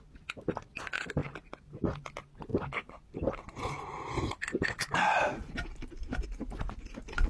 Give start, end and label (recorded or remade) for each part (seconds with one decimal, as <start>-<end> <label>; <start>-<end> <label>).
0.0-7.3 recorded